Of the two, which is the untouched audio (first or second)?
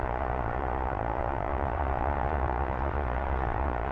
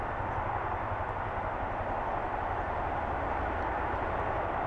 second